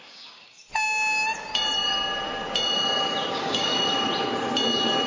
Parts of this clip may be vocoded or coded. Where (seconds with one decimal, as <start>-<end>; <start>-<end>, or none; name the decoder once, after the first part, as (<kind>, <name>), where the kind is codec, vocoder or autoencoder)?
0.0-0.7 (codec, DAC); 3.3-3.7